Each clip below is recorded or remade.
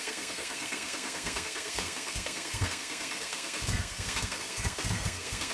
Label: remade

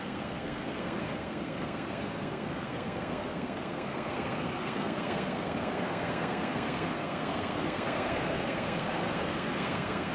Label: remade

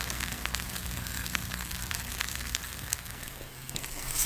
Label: remade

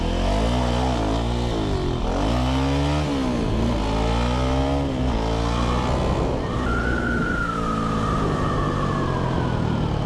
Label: recorded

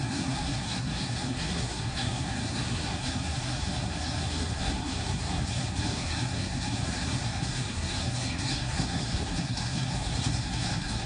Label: remade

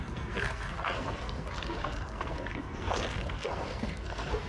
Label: remade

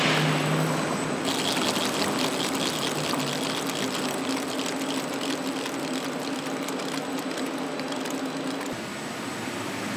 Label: recorded